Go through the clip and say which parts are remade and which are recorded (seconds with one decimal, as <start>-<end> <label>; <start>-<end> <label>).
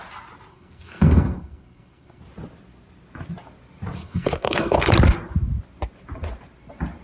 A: 0.0-0.5 recorded; 0.5-2.2 remade; 2.2-4.0 recorded; 4.0-4.9 remade; 4.9-7.0 recorded